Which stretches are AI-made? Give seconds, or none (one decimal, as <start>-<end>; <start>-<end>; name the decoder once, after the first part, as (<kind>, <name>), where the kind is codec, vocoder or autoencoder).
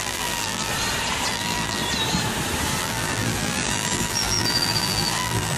0.0-0.7 (vocoder, BigVGAN v2); 1.3-1.8; 2.8-5.6